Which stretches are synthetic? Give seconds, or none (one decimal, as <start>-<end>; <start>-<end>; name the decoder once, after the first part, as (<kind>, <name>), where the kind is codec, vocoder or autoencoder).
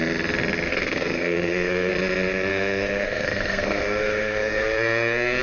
0.7-1.9 (codec, SNAC); 2.5-5.4